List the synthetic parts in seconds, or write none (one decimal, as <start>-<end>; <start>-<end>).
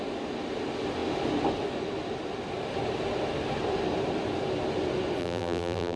5.2-6.0